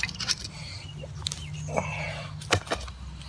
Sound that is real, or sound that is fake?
real